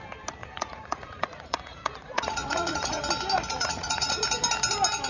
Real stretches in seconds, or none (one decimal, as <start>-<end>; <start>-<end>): 0.0-0.4; 3.0-3.5; 4.2-5.1